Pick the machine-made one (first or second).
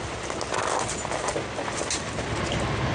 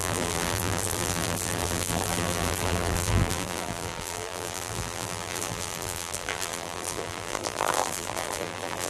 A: second